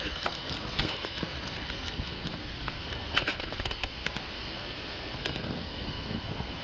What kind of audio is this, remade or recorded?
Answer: remade